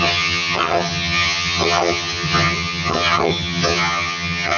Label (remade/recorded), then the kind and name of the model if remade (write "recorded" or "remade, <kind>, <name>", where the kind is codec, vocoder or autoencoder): remade, vocoder, HiFi-GAN